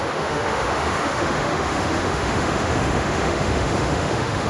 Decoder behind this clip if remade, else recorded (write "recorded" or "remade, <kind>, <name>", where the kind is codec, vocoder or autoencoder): remade, autoencoder, DAC-VAE